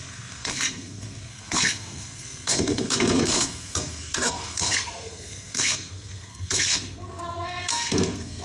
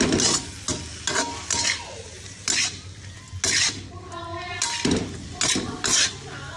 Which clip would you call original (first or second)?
second